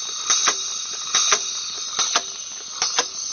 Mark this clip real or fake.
real